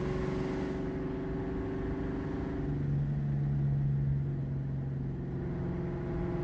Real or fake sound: real